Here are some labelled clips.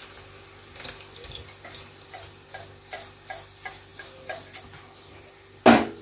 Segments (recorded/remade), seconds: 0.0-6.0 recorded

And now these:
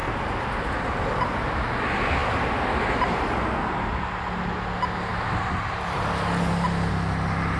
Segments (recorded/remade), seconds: 0.0-7.6 recorded

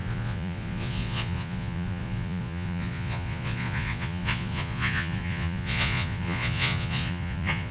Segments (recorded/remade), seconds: 0.0-7.7 remade

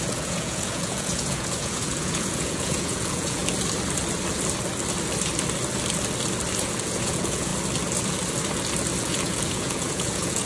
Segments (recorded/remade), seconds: 0.0-3.4 remade; 3.4-6.6 recorded; 6.6-7.5 remade; 7.5-9.0 recorded; 9.0-10.5 remade

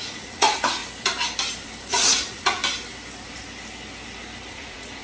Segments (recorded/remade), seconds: 0.0-0.8 remade; 0.8-1.9 recorded; 1.9-2.6 remade; 2.6-4.5 recorded; 4.5-5.0 remade

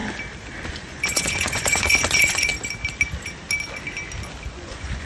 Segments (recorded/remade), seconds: 0.0-0.7 recorded; 0.7-2.5 remade; 2.5-4.5 recorded; 4.5-5.1 remade